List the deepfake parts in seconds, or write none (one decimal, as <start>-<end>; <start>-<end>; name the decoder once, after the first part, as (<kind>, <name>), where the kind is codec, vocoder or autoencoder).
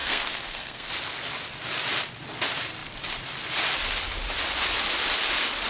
0.0-0.9 (codec, SNAC)